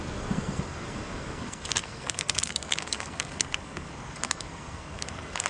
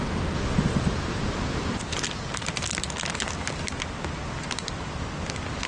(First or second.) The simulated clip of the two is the first